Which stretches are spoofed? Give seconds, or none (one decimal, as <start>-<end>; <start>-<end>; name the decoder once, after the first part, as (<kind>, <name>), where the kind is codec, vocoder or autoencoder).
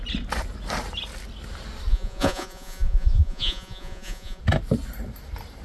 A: 1.9-4.4 (vocoder, Vocos)